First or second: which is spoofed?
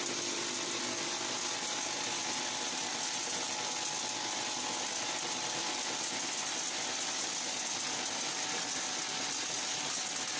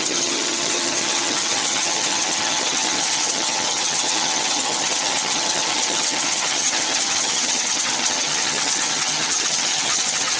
second